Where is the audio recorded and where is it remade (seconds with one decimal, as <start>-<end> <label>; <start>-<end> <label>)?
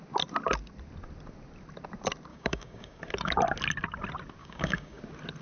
0.0-2.3 recorded; 2.3-3.0 remade; 3.0-4.4 recorded; 4.4-5.0 remade; 5.0-5.4 recorded